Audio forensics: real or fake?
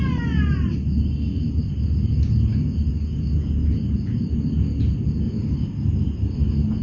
real